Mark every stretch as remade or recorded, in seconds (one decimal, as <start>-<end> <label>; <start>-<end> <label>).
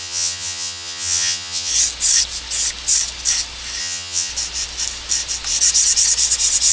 0.0-1.7 remade; 1.7-3.8 recorded; 3.8-4.3 remade; 4.3-6.7 recorded